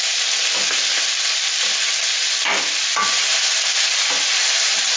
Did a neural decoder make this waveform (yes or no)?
no